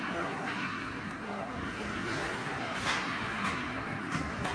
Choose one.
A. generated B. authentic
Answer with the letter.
A